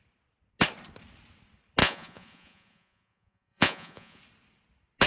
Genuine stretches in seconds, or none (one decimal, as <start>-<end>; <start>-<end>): 0.0-1.8; 4.2-5.1